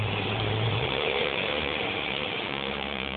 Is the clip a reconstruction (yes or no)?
yes